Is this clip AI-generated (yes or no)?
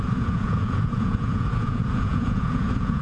yes